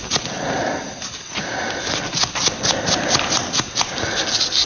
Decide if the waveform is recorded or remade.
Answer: recorded